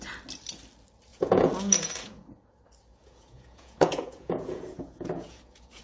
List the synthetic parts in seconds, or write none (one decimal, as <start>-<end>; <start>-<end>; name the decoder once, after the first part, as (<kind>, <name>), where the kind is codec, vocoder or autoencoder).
1.1-2.6 (vocoder, Vocos); 3.0-5.8